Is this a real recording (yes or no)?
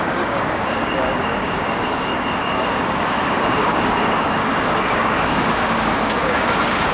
no